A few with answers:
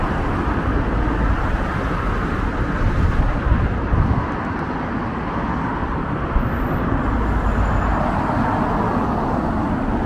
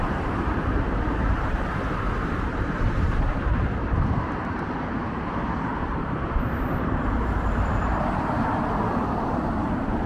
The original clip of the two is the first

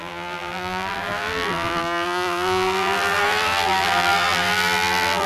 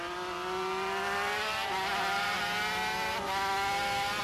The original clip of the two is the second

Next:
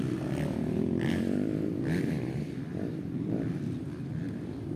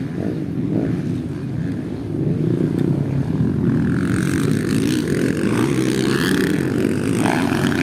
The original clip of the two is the second